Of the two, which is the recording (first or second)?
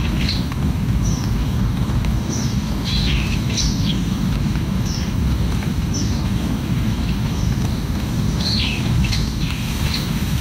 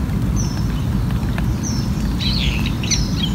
second